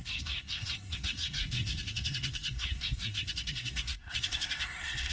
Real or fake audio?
fake